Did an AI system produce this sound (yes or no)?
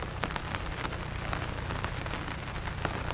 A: no